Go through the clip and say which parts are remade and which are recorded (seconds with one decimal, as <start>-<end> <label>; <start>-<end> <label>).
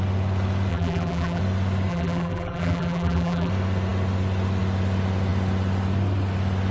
0.0-0.7 recorded; 0.7-1.4 remade; 1.4-1.9 recorded; 1.9-3.5 remade; 3.5-6.7 recorded